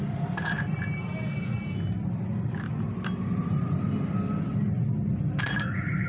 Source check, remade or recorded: recorded